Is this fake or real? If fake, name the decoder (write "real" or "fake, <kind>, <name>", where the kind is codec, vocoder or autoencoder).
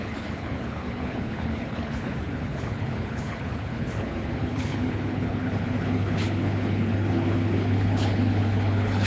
fake, codec, HILCodec